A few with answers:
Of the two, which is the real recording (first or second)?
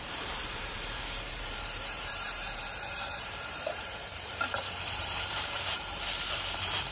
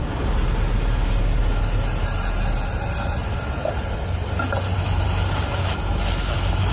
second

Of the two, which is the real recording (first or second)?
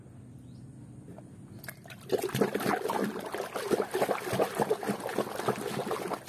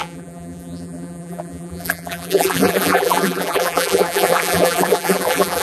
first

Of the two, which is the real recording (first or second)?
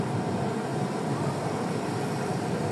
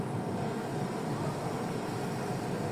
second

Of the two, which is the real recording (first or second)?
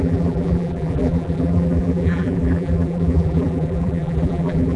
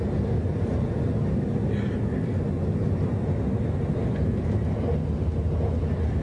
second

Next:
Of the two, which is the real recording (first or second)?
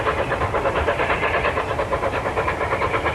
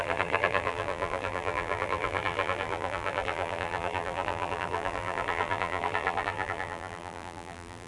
first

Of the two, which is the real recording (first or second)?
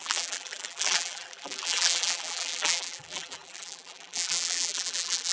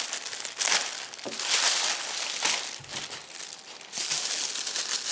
second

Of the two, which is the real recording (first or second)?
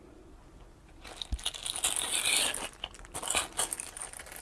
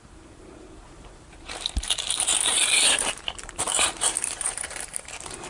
first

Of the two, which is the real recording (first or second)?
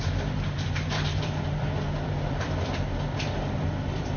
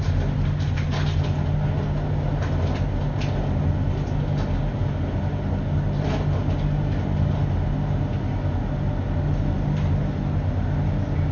second